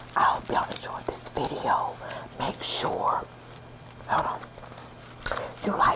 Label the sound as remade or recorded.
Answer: recorded